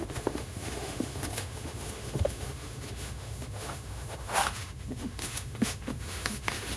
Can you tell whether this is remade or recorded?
remade